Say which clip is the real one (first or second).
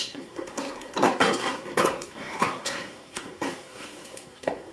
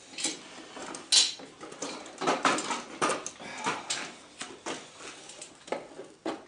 second